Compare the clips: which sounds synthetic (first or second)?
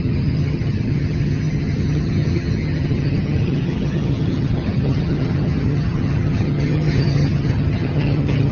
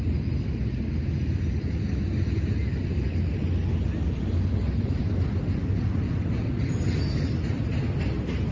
first